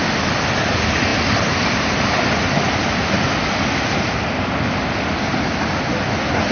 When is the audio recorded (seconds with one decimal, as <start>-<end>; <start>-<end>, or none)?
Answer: 0.0-6.5